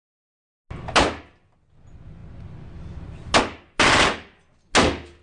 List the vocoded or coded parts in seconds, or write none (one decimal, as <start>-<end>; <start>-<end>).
none